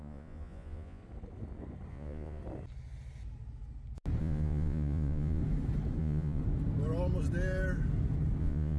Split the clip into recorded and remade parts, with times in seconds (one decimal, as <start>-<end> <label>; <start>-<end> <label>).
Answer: 0.0-1.0 remade; 1.0-1.9 recorded; 1.9-2.4 remade; 2.4-4.2 recorded; 4.2-5.4 remade; 5.4-6.0 recorded; 6.0-6.4 remade; 6.4-8.4 recorded; 8.4-8.8 remade